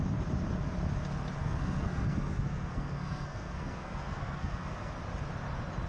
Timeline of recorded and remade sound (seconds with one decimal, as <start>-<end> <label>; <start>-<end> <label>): 0.0-1.4 recorded; 1.4-4.9 remade; 4.9-5.9 recorded